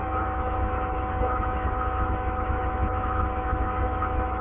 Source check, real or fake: fake